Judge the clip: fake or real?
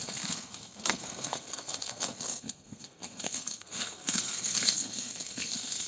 fake